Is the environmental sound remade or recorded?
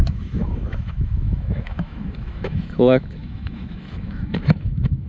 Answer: remade